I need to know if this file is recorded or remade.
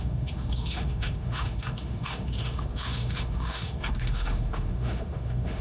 remade